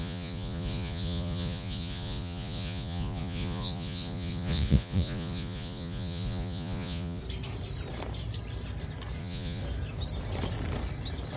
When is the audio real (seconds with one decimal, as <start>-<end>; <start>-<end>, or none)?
7.2-9.2; 9.6-11.4